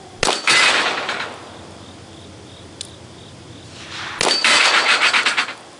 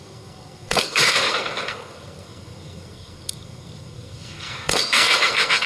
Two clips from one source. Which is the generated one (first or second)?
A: second